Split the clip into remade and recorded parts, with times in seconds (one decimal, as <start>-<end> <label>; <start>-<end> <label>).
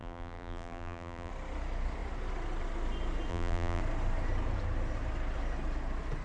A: 0.0-1.3 remade; 1.3-3.3 recorded; 3.3-3.8 remade; 3.8-6.2 recorded